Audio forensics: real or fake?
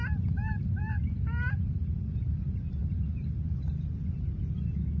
real